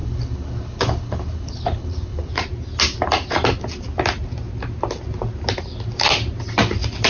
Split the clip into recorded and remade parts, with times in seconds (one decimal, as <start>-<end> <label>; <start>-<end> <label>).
0.0-2.3 remade; 2.3-7.1 recorded